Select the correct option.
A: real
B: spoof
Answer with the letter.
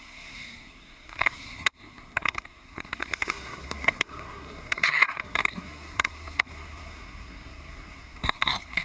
B